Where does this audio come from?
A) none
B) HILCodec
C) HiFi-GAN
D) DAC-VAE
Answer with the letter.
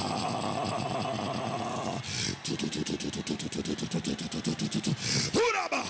A